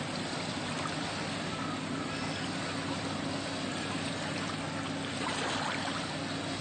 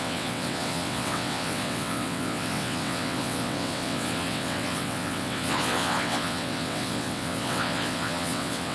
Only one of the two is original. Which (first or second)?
first